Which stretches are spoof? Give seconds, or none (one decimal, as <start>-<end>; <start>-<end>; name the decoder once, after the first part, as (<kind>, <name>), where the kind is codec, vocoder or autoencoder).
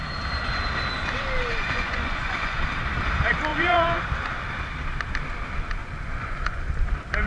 1.5-2.6 (vocoder, Vocos); 3.5-4.0; 5.8-6.7